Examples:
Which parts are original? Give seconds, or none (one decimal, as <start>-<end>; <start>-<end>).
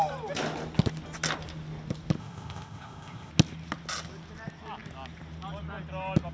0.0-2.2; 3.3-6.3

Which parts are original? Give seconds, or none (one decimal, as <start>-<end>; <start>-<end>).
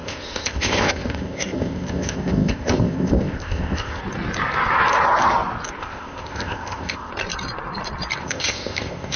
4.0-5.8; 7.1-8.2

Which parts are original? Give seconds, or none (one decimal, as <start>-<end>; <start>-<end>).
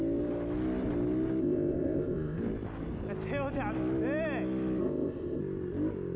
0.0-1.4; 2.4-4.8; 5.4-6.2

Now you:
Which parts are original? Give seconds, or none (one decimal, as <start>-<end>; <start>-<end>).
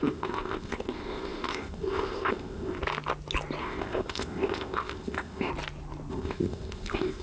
2.8-3.6; 5.5-6.1